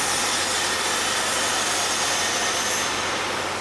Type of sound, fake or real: real